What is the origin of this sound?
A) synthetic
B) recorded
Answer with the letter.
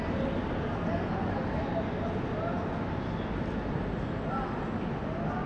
B